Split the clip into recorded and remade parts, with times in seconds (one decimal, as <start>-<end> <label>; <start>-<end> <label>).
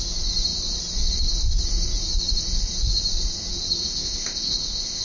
0.0-3.8 recorded; 3.8-5.0 remade